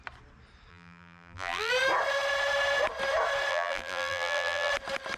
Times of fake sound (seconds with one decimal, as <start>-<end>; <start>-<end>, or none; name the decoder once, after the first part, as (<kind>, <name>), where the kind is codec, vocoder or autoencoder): 0.7-1.7 (vocoder, BigVGAN v2); 3.5-4.7

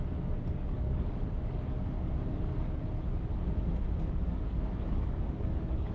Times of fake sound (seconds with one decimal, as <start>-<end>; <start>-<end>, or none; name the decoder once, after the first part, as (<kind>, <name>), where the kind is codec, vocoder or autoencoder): 0.0-2.8 (codec, DAC); 4.0-5.9